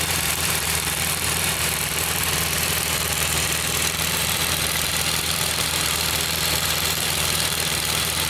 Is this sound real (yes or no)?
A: no